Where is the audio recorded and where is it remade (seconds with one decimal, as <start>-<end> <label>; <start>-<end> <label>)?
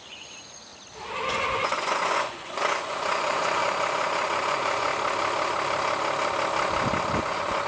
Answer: 0.0-0.7 remade; 0.7-1.3 recorded; 1.3-4.9 remade; 4.9-7.2 recorded; 7.2-7.7 remade